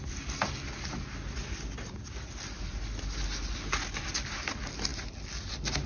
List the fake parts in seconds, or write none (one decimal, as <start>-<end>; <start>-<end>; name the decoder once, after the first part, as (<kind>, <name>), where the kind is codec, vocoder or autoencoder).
none

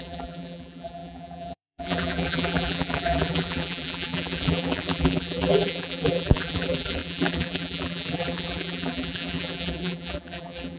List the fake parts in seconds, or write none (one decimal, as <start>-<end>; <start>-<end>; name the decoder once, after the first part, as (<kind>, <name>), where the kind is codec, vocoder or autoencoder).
0.0-10.8 (vocoder, BigVGAN v2)

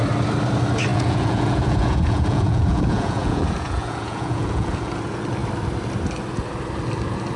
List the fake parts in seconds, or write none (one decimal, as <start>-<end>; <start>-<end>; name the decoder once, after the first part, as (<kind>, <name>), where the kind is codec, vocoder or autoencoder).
0.9-5.0 (vocoder, Vocos)

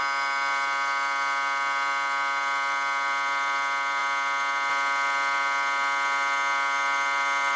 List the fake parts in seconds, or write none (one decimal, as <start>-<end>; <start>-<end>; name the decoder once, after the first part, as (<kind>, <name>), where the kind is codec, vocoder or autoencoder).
none

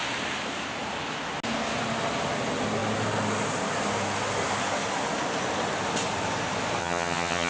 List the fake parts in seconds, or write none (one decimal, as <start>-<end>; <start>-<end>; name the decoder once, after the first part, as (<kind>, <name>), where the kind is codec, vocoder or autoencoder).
6.8-7.5 (vocoder, HiFi-GAN)